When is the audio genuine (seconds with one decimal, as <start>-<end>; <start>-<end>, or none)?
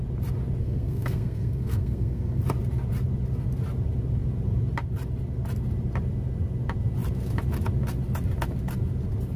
0.0-0.6; 2.4-9.4